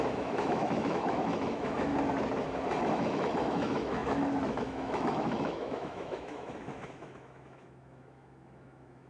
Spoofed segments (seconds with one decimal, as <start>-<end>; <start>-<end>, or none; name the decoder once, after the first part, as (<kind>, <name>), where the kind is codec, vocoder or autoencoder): 0.0-1.9 (autoencoder, DAC-VAE); 2.9-9.1